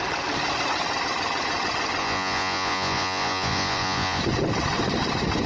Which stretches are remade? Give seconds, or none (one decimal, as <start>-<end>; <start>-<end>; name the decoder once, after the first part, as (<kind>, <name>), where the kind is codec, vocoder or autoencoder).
2.0-4.2 (vocoder, Vocos)

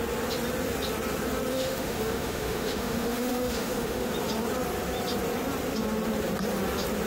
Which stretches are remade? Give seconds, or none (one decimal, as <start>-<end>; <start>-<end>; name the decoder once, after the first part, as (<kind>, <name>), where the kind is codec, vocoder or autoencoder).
1.5-4.1 (autoencoder, DAC-VAE)